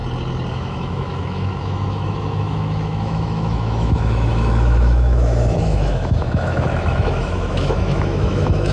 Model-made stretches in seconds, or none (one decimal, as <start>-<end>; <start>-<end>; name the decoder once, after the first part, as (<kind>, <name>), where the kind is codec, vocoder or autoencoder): 0.5-8.7 (autoencoder, DAC-VAE)